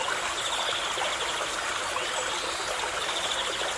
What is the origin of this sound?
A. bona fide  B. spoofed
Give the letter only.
A